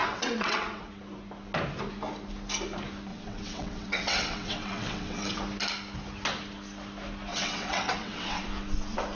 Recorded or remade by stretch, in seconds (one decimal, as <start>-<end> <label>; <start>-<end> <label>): 0.0-0.9 remade; 0.9-3.1 recorded; 3.1-5.4 remade; 5.4-7.3 recorded; 7.3-8.4 remade; 8.4-9.1 recorded